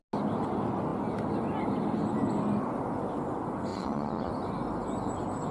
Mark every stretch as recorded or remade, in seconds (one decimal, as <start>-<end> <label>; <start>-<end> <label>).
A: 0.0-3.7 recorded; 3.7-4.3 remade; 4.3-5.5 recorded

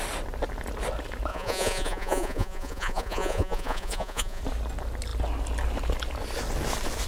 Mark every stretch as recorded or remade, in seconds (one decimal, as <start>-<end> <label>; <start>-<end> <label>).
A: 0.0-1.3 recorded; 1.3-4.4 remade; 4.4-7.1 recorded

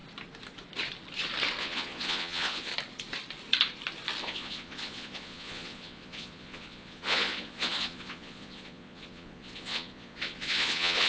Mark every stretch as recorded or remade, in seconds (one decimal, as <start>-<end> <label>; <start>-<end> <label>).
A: 0.0-1.6 recorded; 1.6-2.7 remade; 2.7-4.2 recorded; 4.2-11.1 remade